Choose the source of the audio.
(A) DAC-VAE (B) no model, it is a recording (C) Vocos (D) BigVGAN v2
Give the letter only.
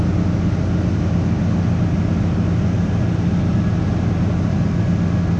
B